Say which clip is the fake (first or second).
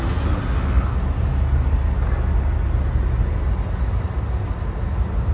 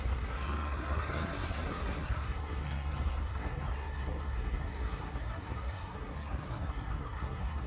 second